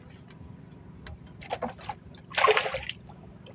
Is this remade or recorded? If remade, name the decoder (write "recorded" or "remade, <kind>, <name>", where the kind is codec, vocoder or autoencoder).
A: recorded